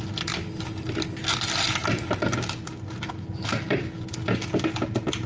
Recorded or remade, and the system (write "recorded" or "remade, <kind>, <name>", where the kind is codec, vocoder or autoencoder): recorded